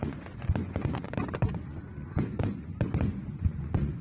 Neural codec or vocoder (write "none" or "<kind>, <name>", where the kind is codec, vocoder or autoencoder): vocoder, Vocos